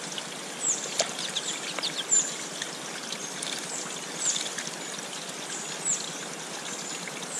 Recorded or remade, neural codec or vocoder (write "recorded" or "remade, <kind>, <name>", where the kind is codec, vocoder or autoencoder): recorded